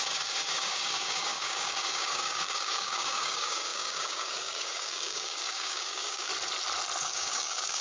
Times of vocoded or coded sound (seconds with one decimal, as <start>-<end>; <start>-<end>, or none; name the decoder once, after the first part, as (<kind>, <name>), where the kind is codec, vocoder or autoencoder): 0.0-6.3 (codec, DAC); 7.0-7.8